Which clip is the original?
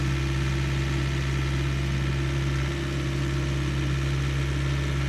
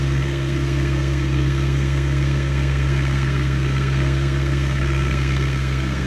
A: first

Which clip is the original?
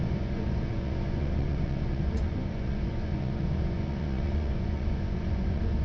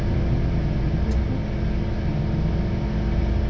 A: second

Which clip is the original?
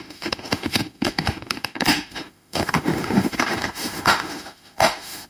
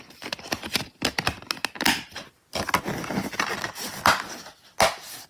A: second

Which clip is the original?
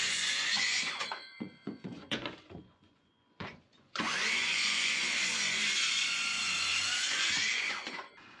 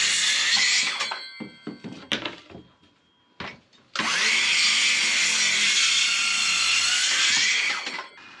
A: second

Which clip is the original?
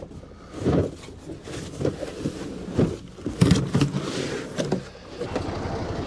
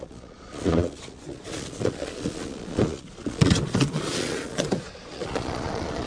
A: first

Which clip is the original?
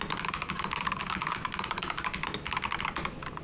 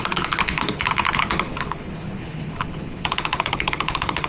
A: first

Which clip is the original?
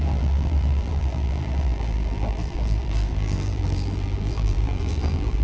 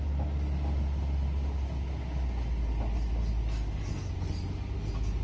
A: second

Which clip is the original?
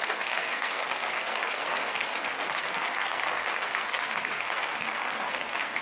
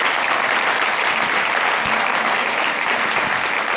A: second